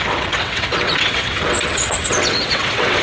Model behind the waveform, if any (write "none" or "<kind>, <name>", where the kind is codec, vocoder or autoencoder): vocoder, WaveNeXt